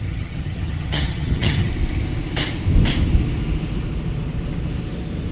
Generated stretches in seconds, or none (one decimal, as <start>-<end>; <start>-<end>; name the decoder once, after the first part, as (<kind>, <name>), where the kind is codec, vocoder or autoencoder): 0.0-1.7 (vocoder, HiFi-GAN)